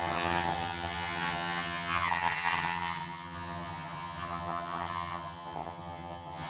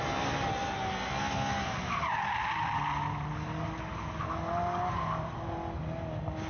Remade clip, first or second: first